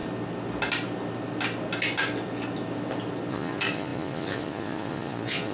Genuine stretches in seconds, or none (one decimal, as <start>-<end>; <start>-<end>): 0.0-3.3